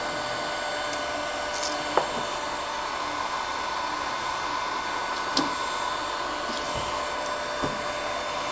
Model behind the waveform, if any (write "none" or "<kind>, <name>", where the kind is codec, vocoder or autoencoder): none